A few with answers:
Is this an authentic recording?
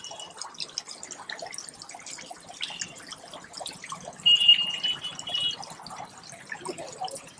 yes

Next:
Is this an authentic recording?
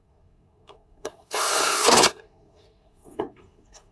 no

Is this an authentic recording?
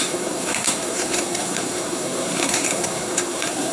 no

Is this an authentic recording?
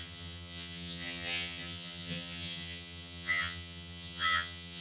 no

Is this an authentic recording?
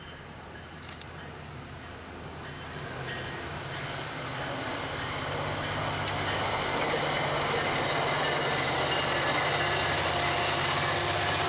yes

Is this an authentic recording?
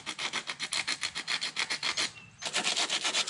yes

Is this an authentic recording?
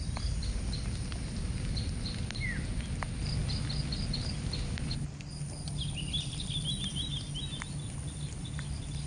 yes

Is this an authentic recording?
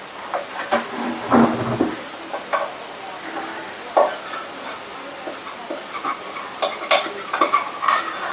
yes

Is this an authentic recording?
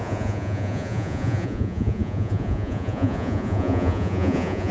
no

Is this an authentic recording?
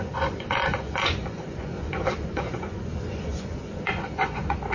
no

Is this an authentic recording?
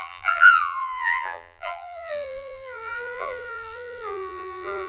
no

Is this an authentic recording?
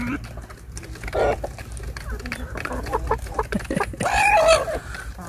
yes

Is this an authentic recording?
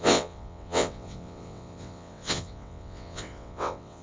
no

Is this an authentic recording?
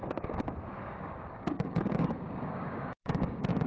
no